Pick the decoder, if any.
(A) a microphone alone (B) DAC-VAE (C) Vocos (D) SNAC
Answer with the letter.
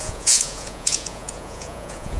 C